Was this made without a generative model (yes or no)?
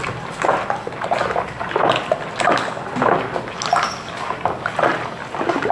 yes